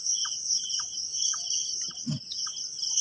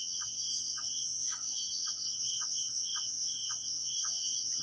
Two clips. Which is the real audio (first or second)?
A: first